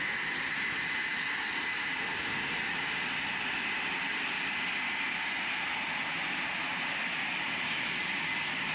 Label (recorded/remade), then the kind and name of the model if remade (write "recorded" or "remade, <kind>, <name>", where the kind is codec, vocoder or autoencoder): recorded